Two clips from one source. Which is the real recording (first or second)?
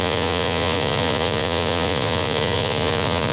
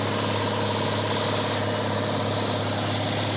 second